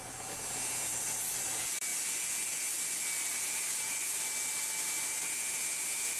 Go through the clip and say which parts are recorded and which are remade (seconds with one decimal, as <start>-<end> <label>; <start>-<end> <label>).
0.0-6.2 recorded